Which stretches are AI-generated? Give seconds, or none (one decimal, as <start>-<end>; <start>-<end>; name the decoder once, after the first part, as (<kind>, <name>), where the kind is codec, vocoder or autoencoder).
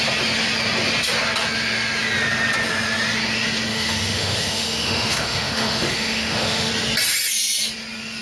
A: 3.7-6.7 (autoencoder, DAC-VAE)